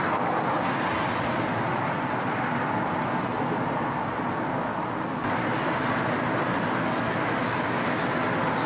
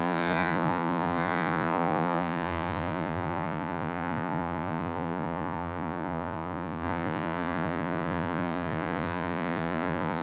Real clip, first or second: first